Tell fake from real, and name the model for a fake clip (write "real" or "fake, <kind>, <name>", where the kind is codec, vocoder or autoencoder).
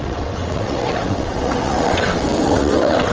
fake, vocoder, WaveNeXt